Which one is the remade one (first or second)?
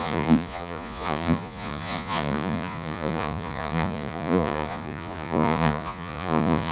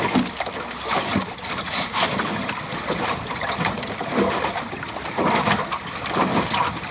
first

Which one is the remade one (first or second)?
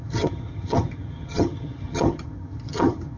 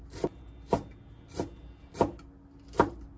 first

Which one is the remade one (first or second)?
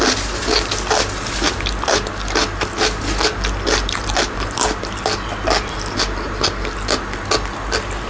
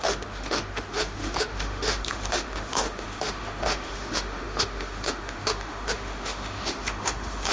second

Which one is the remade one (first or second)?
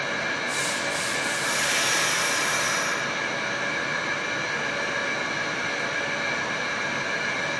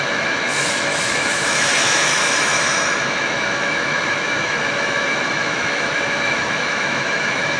second